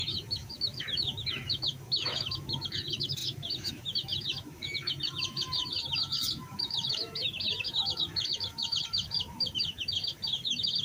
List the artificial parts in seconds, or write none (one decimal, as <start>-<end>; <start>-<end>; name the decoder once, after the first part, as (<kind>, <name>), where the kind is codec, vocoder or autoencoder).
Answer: 0.0-10.8 (autoencoder, DAC-VAE)